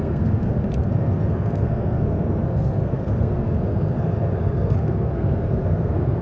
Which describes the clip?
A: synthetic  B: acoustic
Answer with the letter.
A